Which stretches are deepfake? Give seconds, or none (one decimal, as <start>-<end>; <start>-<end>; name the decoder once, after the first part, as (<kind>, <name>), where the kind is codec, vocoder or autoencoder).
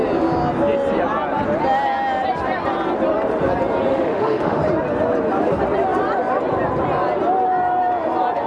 3.9-4.6 (autoencoder, DAC-VAE)